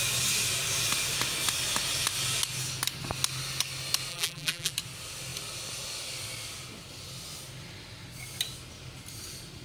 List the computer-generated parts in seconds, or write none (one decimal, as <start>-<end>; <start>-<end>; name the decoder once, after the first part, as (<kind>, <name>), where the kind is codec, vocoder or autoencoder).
4.1-4.7 (vocoder, BigVGAN v2)